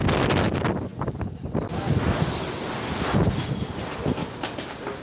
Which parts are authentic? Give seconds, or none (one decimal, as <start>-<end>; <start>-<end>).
0.0-5.0